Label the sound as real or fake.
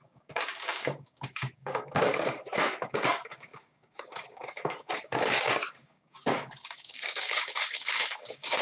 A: fake